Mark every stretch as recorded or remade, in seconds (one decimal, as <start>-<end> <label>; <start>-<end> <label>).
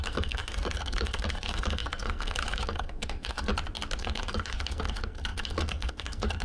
0.0-3.5 remade; 3.5-4.0 recorded; 4.0-6.4 remade